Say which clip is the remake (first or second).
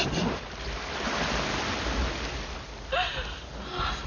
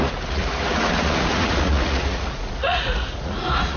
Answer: second